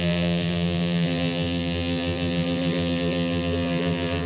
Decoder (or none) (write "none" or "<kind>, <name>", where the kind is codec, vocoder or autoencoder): vocoder, BigVGAN v2